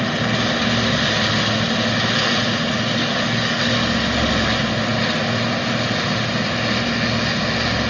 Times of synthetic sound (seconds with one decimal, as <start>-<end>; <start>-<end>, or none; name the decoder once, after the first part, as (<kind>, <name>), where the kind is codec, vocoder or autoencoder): 3.0-3.6 (codec, DAC)